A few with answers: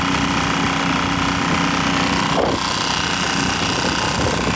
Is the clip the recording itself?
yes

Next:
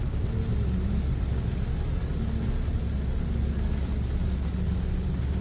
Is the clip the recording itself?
yes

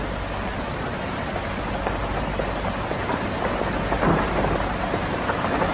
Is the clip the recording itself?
yes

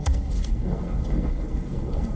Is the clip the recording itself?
no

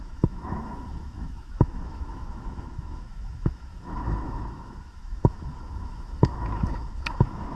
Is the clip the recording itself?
no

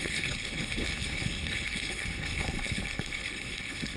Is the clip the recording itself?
no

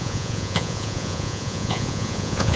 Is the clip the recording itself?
no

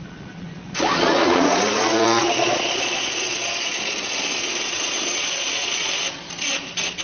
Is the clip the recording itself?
no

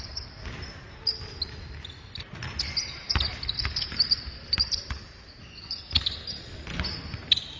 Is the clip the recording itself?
yes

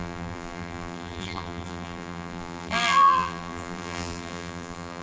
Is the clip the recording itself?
no